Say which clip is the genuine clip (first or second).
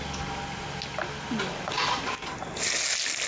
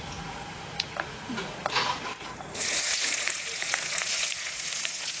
first